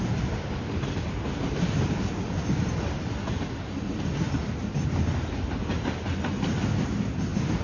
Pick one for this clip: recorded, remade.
recorded